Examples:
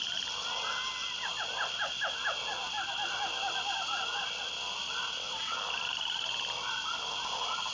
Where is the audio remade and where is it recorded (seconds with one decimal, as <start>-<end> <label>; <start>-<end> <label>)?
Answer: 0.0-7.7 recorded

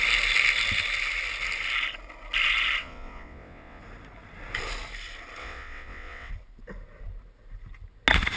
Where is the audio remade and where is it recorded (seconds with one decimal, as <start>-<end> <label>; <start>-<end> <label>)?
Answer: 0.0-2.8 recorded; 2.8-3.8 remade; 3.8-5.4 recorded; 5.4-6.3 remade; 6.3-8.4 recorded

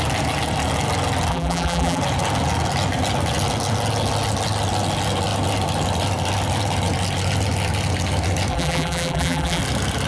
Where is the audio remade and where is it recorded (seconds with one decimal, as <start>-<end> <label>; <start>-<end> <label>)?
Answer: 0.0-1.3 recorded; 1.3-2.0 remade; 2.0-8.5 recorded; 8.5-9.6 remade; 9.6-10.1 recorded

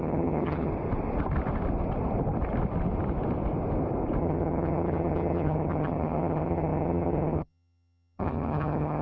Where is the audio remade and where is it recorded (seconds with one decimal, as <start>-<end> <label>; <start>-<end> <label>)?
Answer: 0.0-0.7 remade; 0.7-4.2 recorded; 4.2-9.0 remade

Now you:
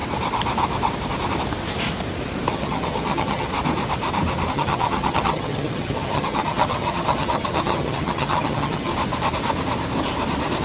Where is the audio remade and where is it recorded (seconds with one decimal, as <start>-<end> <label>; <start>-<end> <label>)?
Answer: 0.0-2.5 recorded; 2.5-3.5 remade; 3.5-4.5 recorded; 4.5-8.9 remade; 8.9-10.6 recorded

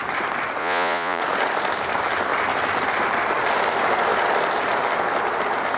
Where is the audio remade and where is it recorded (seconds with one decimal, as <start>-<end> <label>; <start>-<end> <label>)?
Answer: 0.0-0.6 recorded; 0.6-1.2 remade; 1.2-5.8 recorded

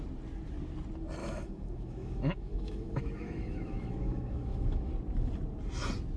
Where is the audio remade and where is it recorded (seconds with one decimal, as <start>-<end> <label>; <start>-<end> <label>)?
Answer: 0.0-1.2 recorded; 1.2-4.9 remade; 4.9-6.2 recorded